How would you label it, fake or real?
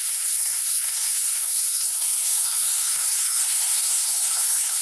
fake